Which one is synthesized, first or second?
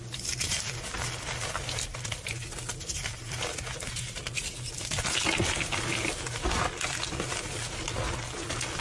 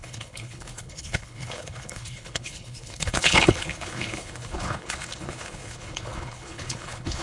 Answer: second